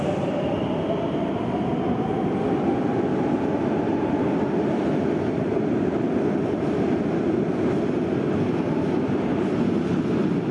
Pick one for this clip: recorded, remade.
recorded